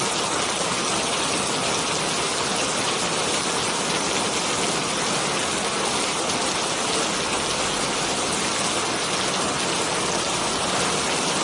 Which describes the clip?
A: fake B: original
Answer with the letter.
B